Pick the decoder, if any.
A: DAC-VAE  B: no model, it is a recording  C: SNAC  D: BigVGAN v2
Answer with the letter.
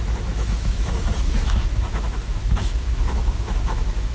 A